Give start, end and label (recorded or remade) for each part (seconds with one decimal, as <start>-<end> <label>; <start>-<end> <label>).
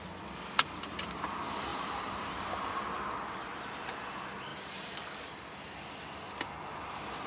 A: 0.0-1.7 recorded; 1.7-2.3 remade; 2.3-4.5 recorded; 4.5-5.4 remade; 5.4-7.3 recorded